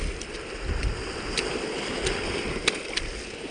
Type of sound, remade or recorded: recorded